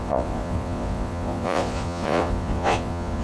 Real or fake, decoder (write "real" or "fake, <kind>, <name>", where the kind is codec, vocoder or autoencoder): fake, vocoder, Vocos